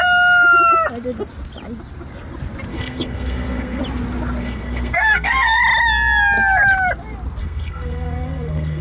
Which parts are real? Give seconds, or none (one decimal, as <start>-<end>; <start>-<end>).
0.0-2.7; 3.8-4.4; 5.6-7.4